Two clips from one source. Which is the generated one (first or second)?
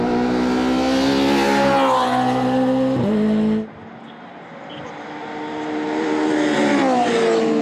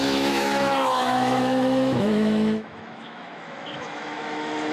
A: second